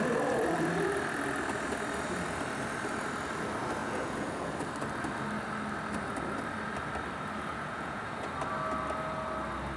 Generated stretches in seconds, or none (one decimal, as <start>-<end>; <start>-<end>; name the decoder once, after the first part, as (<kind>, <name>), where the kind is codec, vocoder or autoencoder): 3.8-4.5 (vocoder, Vocos); 7.5-8.3